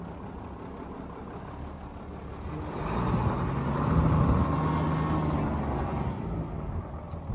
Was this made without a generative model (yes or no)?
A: yes